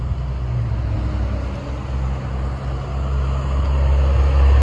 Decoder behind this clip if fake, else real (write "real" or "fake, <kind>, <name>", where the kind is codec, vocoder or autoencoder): real